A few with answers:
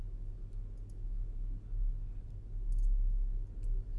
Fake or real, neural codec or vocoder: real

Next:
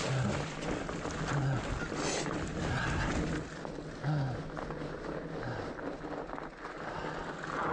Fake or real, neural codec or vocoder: real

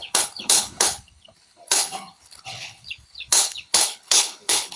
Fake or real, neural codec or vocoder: fake, codec, HILCodec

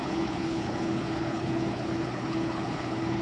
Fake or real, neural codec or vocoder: fake, codec, HILCodec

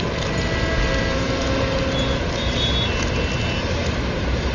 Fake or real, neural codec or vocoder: real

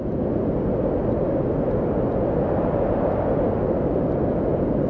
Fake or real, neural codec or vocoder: real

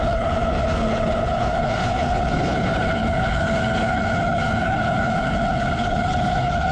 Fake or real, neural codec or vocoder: fake, codec, HILCodec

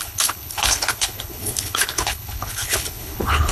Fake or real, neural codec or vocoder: fake, codec, HILCodec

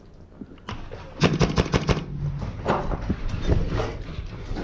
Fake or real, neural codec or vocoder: real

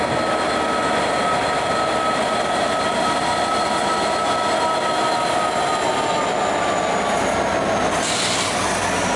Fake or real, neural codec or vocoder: real